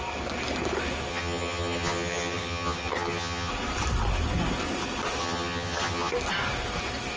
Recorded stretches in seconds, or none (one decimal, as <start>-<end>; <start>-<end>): 0.0-1.1; 3.5-5.2; 6.1-7.2